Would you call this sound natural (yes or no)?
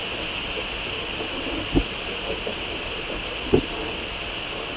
yes